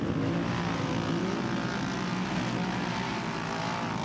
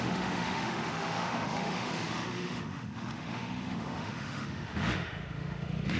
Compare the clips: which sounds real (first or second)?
first